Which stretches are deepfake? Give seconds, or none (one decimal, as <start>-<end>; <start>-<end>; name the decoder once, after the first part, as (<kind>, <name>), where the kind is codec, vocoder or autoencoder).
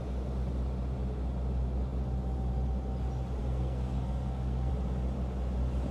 3.4-4.7 (codec, SNAC)